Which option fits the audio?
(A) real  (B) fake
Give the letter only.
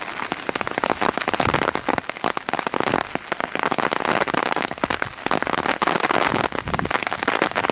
A